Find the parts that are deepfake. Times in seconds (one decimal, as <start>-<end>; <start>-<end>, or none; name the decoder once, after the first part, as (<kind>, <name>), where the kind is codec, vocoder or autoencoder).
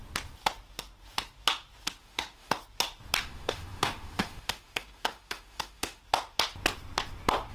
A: 2.0-2.6 (autoencoder, DAC-VAE); 3.2-6.0